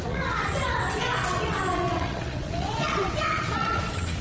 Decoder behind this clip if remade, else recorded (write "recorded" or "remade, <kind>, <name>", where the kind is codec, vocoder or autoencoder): remade, vocoder, WaveNeXt